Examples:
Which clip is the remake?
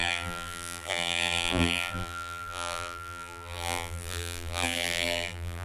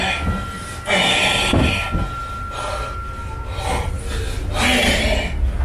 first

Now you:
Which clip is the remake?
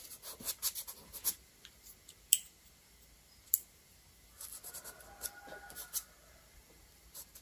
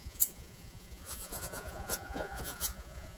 second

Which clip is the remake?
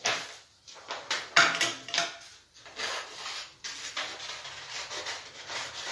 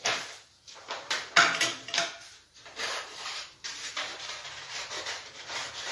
second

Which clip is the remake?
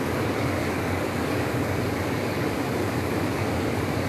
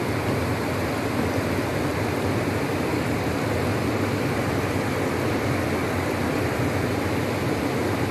first